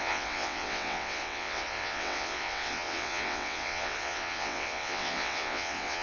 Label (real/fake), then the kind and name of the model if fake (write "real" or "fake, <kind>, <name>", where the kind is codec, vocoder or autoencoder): fake, vocoder, WaveNeXt